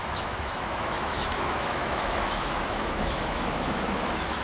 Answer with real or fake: fake